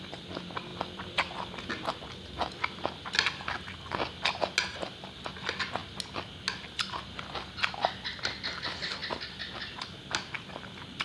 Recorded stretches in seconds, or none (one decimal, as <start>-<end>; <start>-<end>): 0.0-11.0